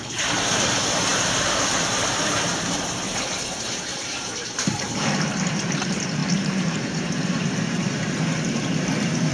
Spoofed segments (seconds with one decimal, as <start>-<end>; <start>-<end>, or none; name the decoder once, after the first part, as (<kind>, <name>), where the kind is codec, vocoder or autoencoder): 0.0-9.3 (vocoder, BigVGAN v2)